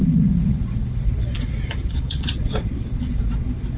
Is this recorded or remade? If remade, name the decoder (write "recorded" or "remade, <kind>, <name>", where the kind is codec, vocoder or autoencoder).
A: remade, vocoder, Vocos